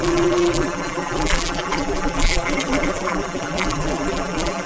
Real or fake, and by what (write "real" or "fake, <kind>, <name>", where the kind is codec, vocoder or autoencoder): fake, vocoder, BigVGAN v2